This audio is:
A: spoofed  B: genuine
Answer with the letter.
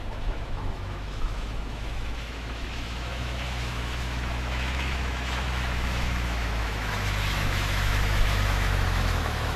A